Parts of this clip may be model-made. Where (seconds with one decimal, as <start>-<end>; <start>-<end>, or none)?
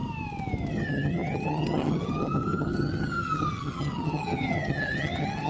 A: 0.7-5.5